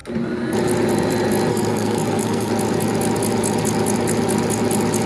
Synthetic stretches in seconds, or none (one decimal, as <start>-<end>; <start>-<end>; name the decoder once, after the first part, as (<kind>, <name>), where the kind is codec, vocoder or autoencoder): 1.5-2.5 (codec, SNAC)